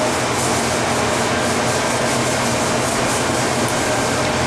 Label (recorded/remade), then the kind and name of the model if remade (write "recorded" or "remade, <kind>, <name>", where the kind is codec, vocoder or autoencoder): recorded